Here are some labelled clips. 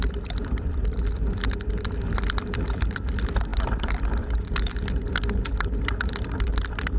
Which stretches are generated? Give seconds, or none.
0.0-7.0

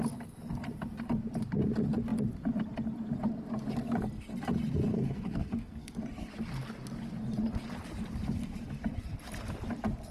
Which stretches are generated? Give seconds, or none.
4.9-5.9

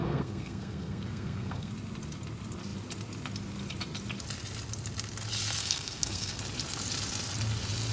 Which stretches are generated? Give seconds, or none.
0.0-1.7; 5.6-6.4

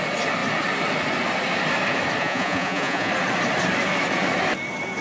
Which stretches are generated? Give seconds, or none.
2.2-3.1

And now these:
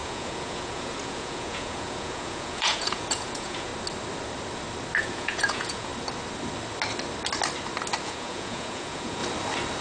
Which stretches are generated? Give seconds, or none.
0.0-3.7; 5.0-5.9; 8.0-9.2